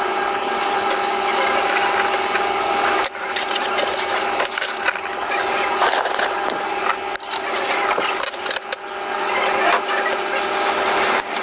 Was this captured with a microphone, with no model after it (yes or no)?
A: yes